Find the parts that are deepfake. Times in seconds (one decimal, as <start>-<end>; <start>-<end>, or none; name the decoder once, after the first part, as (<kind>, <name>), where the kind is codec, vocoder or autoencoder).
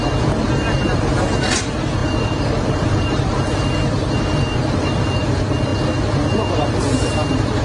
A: 0.0-5.7 (vocoder, BigVGAN v2); 6.5-7.6